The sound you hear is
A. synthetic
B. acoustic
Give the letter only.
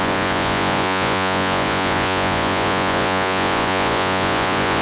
A